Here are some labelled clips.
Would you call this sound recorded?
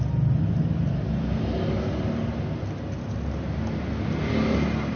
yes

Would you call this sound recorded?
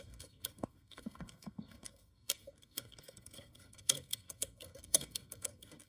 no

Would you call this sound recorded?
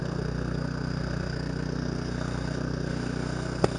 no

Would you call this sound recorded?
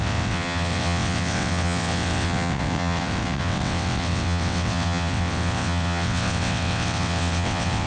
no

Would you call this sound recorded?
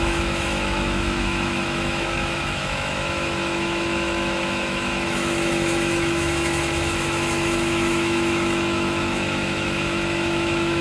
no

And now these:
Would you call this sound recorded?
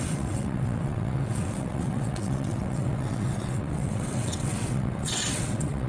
no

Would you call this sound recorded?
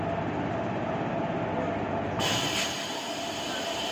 yes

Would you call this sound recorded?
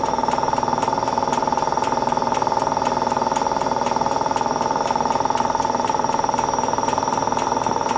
yes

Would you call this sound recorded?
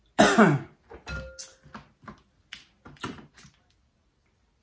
yes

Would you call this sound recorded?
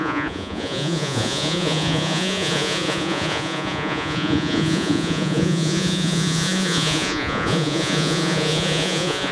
no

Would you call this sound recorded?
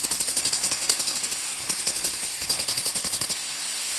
no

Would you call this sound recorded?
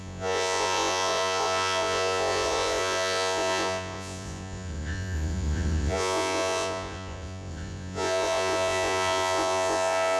no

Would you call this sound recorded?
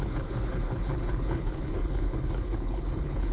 no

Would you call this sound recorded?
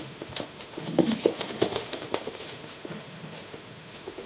no